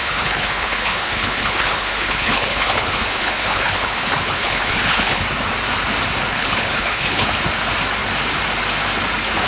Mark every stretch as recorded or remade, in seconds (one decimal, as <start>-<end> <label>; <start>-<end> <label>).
0.0-5.2 remade; 5.2-6.3 recorded; 6.3-7.3 remade; 7.3-9.5 recorded